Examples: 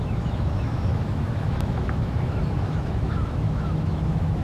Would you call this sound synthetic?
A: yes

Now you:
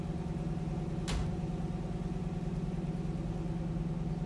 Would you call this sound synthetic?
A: no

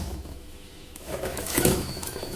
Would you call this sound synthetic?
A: yes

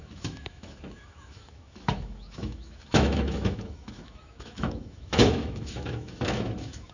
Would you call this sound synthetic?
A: yes